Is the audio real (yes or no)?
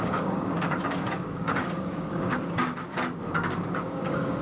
no